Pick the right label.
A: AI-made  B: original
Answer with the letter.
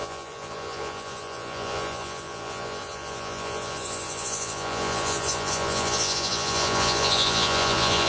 A